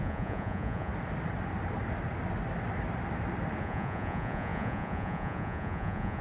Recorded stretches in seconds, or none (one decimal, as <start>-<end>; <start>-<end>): 0.9-3.6